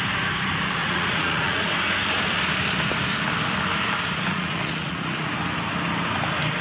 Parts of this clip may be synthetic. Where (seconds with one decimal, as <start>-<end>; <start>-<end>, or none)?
0.8-1.7; 4.3-5.3